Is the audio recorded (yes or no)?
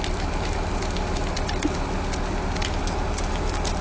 yes